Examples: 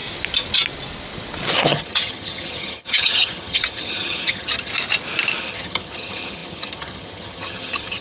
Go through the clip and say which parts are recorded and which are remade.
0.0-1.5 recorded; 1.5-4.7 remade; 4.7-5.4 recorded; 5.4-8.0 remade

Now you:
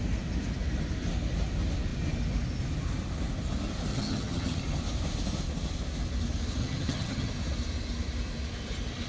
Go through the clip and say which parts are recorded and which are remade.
0.0-3.9 recorded; 3.9-4.6 remade; 4.6-6.6 recorded; 6.6-7.3 remade; 7.3-9.1 recorded

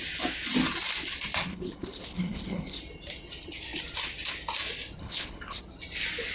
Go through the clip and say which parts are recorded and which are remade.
0.0-1.5 recorded; 1.5-2.8 remade; 2.8-5.0 recorded; 5.0-5.6 remade; 5.6-6.3 recorded

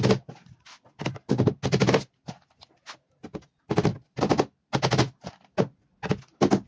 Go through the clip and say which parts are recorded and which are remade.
0.0-6.7 recorded

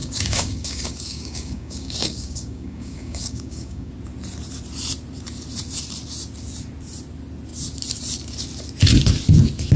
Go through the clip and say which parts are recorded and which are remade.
0.0-3.9 remade; 3.9-9.8 recorded